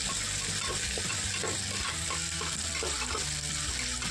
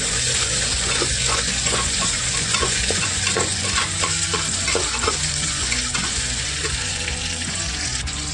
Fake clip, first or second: second